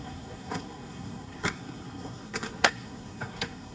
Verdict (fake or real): fake